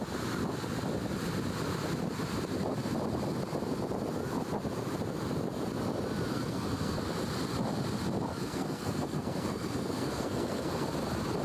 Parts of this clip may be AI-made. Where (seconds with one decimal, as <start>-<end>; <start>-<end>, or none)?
6.3-7.0; 8.3-10.9